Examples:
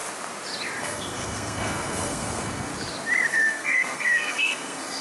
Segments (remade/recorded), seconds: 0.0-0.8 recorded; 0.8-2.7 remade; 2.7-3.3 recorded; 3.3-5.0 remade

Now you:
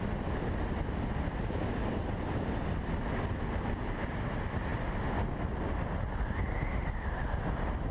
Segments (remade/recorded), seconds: 0.0-7.9 recorded

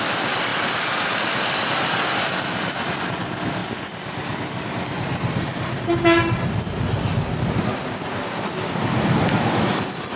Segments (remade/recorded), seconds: 0.0-10.2 recorded

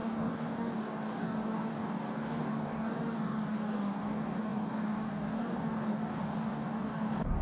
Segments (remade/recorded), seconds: 0.0-7.4 remade

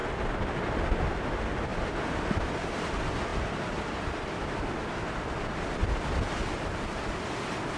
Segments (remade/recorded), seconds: 0.0-1.7 recorded; 1.7-2.9 remade; 2.9-3.3 recorded; 3.3-5.0 remade; 5.0-5.8 recorded; 5.8-7.3 remade; 7.3-7.8 recorded

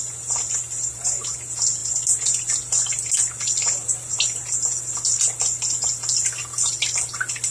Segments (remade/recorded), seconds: 0.0-7.5 recorded

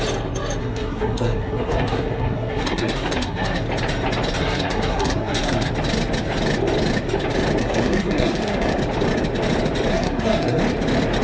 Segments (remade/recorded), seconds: 0.0-0.6 recorded; 0.6-3.6 remade; 3.6-4.4 recorded; 4.4-5.7 remade; 5.7-7.6 recorded; 7.6-8.8 remade; 8.8-9.9 recorded; 9.9-10.6 remade; 10.6-11.2 recorded